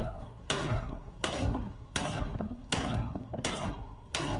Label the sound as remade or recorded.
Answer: remade